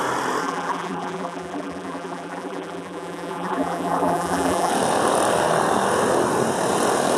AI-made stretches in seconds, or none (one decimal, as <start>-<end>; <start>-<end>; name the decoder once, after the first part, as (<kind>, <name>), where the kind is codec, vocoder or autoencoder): 0.4-4.7 (vocoder, BigVGAN v2)